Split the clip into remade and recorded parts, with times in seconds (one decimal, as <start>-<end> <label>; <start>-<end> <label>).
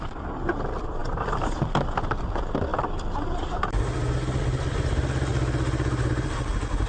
0.0-1.0 recorded; 1.0-1.6 remade; 1.6-2.7 recorded; 2.7-3.8 remade; 3.8-6.9 recorded